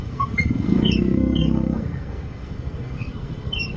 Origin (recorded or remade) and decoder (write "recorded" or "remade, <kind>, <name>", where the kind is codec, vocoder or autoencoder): remade, codec, SNAC